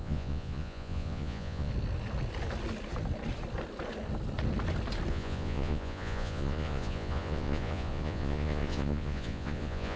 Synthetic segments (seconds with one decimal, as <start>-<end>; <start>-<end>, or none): 0.0-1.7; 5.1-10.0